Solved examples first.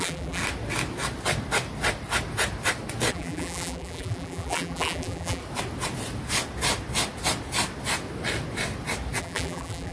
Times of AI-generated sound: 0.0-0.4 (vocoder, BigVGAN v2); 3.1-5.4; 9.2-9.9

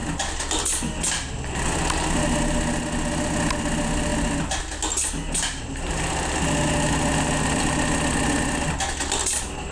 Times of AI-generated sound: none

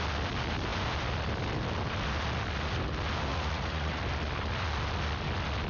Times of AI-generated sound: 3.3-4.0 (vocoder, Vocos)